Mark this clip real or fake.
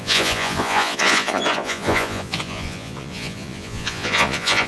fake